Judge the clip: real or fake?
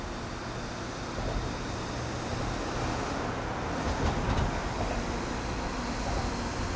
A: real